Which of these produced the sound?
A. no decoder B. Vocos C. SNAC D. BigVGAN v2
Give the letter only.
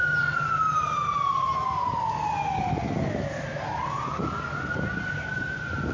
A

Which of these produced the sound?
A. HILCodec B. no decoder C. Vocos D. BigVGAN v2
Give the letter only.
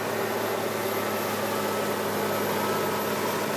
B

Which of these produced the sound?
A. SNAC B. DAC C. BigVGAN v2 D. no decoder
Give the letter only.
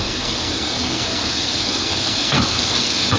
A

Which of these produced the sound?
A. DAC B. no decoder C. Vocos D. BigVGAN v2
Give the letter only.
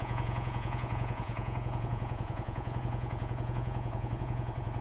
C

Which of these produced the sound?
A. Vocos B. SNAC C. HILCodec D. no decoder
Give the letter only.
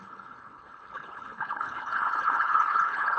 C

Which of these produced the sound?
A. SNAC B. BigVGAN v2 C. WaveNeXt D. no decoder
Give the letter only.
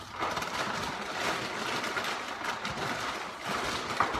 D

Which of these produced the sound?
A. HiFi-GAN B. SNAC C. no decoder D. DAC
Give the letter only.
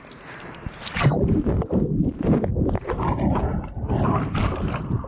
C